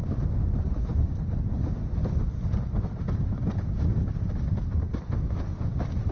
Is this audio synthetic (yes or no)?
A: no